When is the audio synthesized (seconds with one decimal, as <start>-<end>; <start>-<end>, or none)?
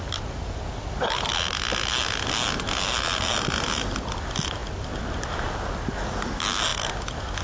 none